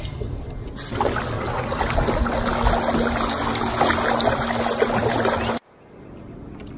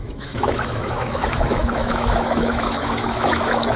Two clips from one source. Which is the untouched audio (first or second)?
first